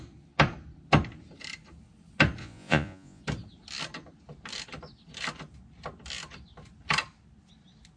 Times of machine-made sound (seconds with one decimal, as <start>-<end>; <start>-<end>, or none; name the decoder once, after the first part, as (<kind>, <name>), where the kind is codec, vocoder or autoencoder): 2.4-3.2 (vocoder, Vocos)